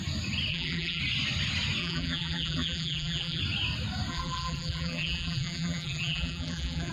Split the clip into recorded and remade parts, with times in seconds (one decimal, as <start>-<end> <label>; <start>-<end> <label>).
0.0-0.5 recorded; 0.5-1.0 remade; 1.0-1.8 recorded; 1.8-3.4 remade; 3.4-4.1 recorded; 4.1-6.9 remade